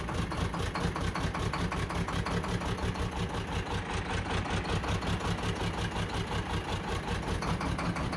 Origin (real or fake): real